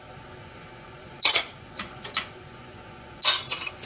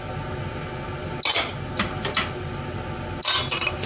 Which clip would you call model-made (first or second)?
first